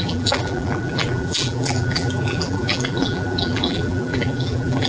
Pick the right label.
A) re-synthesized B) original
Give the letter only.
A